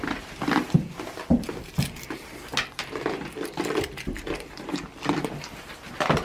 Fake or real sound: real